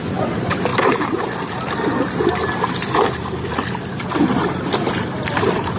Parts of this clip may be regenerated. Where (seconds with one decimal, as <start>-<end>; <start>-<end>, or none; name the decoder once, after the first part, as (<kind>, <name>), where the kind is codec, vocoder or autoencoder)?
0.0-0.7 (vocoder, BigVGAN v2); 4.2-5.8